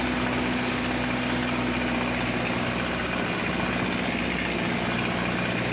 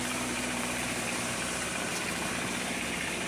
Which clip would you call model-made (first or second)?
second